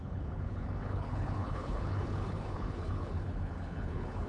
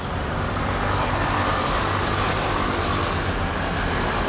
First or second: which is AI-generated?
first